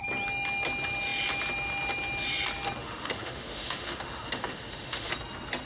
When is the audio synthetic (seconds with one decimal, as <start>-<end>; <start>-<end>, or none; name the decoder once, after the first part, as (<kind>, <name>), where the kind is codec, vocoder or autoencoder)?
2.8-5.1 (autoencoder, DAC-VAE)